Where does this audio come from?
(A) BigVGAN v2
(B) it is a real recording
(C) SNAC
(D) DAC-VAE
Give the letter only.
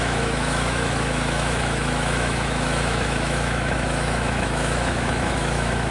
D